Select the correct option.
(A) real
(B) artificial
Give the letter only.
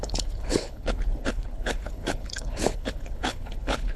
B